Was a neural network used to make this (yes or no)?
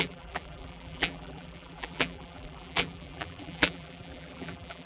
yes